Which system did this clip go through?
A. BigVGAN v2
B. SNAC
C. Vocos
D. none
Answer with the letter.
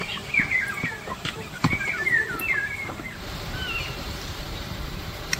A